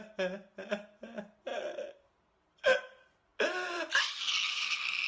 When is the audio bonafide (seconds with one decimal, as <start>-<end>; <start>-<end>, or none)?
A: 0.0-1.5; 2.5-3.3; 4.1-5.1